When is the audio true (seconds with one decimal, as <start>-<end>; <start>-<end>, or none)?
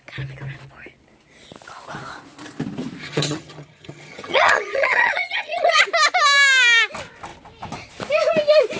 0.0-3.0; 5.8-8.8